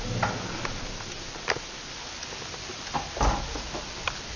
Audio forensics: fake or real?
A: real